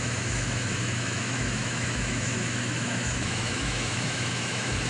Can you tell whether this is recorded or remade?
remade